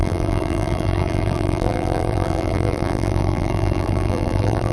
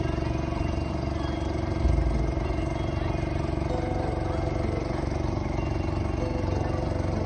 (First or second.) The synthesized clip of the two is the first